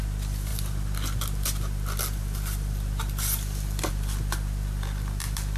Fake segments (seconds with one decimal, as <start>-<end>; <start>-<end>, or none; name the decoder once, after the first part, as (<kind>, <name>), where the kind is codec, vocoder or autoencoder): none